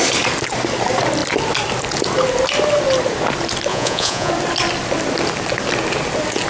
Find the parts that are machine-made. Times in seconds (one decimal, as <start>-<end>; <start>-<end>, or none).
3.7-4.3